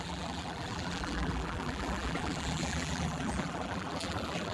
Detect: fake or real fake